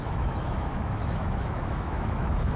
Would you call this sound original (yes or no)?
no